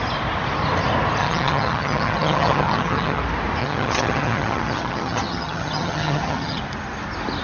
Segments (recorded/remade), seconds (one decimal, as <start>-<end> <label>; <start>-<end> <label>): 0.0-1.2 recorded; 1.2-3.2 remade; 3.2-3.6 recorded; 3.6-6.6 remade; 6.6-7.4 recorded